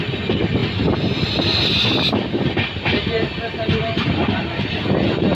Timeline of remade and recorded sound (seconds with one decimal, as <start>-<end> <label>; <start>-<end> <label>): 0.0-5.3 recorded